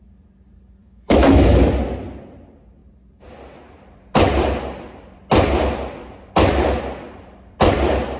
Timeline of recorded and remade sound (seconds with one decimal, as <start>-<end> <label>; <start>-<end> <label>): 0.0-0.8 recorded; 0.8-1.6 remade; 1.6-8.2 recorded

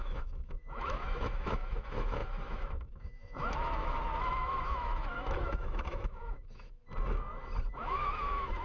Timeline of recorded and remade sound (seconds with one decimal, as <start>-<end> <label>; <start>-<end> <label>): 0.0-6.8 remade; 6.8-7.7 recorded; 7.7-8.6 remade